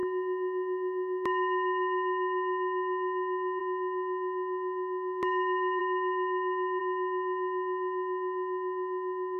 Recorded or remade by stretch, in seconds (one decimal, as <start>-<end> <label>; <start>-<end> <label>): 0.0-9.4 recorded